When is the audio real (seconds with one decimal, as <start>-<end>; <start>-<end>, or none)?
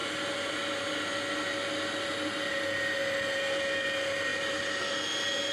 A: 0.0-5.5